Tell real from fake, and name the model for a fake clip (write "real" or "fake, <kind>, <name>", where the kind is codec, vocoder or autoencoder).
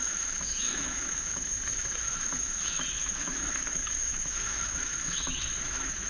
fake, autoencoder, DAC-VAE